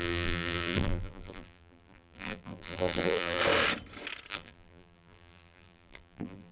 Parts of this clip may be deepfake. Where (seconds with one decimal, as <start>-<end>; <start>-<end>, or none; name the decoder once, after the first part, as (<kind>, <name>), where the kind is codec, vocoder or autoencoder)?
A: 0.0-3.4 (vocoder, BigVGAN v2); 4.3-6.5